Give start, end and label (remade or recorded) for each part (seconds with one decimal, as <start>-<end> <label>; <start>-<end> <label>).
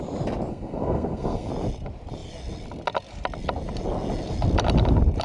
0.0-0.5 recorded; 0.5-1.5 remade; 1.5-5.2 recorded